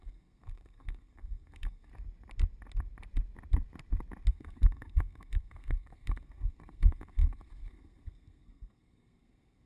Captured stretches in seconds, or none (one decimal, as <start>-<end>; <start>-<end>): 1.9-4.3